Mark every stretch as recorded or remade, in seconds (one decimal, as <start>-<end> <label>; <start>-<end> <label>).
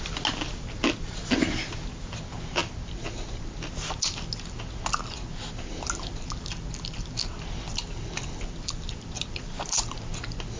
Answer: 0.0-10.6 recorded